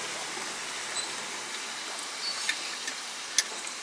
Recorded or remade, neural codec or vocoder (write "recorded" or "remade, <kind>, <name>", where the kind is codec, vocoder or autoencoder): recorded